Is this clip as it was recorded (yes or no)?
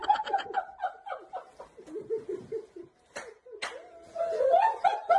yes